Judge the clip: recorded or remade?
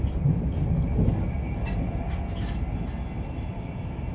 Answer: recorded